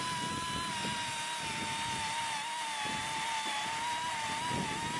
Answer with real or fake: real